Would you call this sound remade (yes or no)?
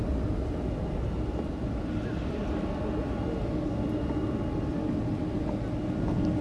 no